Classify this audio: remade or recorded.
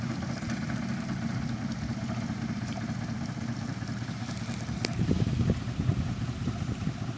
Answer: remade